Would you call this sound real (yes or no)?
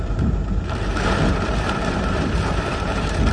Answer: no